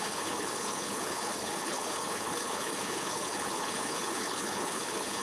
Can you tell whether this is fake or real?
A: fake